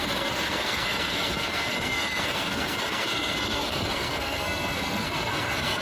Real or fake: fake